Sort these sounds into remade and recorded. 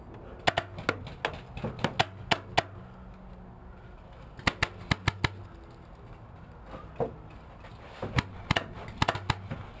recorded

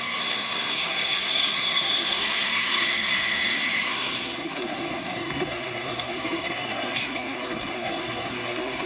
remade